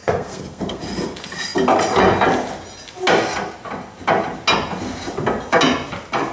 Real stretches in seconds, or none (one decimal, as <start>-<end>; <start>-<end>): 0.8-6.3